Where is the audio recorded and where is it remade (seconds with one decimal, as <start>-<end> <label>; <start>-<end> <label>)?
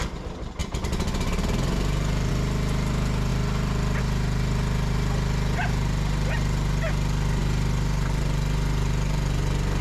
0.0-9.8 recorded